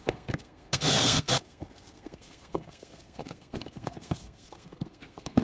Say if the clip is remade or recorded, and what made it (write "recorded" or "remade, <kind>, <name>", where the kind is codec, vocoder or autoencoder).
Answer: remade, codec, SNAC